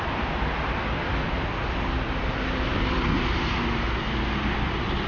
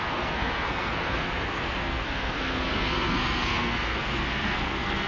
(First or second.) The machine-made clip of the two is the second